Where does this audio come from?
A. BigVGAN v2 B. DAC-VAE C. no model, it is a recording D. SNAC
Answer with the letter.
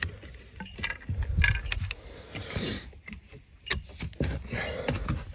C